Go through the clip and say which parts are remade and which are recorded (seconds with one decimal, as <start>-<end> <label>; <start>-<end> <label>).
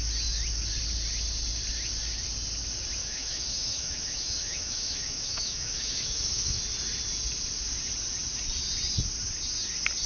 0.0-3.0 recorded; 3.0-6.6 remade; 6.6-10.1 recorded